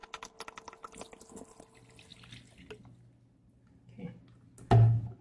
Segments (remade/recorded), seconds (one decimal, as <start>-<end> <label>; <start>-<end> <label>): 0.0-5.2 recorded